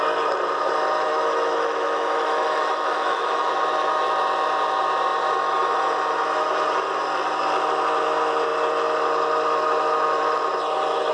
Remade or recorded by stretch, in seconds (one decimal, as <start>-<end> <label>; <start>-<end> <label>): 0.0-1.1 recorded; 1.1-3.5 remade; 3.5-11.1 recorded